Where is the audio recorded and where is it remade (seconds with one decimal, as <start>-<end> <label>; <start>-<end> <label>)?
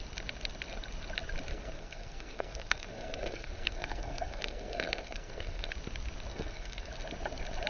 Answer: 0.0-1.5 recorded; 1.5-5.7 remade; 5.7-6.3 recorded; 6.3-6.9 remade; 6.9-7.7 recorded